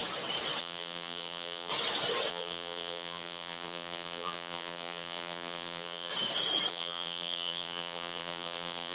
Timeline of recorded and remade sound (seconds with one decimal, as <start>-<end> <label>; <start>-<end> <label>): 0.0-0.6 recorded; 0.6-1.7 remade; 1.7-2.3 recorded; 2.3-6.1 remade; 6.1-6.7 recorded; 6.7-8.9 remade